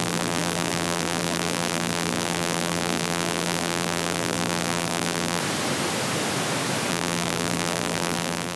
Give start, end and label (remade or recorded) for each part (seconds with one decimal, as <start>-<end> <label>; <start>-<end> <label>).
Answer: 0.0-5.4 remade; 5.4-6.9 recorded; 6.9-8.6 remade